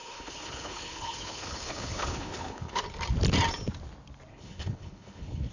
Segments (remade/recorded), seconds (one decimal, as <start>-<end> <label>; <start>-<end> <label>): 0.0-2.8 remade; 2.8-4.3 recorded; 4.3-5.5 remade